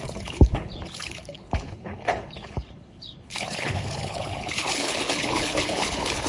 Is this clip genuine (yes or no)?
no